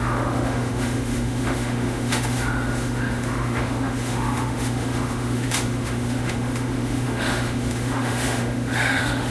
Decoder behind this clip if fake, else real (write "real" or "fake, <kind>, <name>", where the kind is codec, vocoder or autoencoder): fake, autoencoder, DAC-VAE